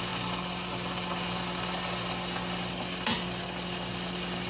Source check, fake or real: fake